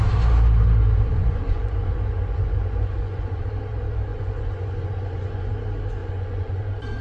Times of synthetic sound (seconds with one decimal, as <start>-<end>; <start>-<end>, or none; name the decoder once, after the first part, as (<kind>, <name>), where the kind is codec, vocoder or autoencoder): 1.1-3.4 (vocoder, Vocos); 4.1-5.5; 6.0-6.6